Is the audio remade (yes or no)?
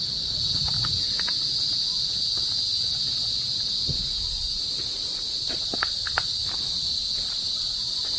no